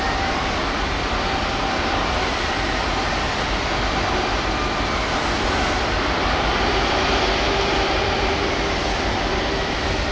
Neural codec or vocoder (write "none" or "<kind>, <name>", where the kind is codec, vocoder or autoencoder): vocoder, BigVGAN v2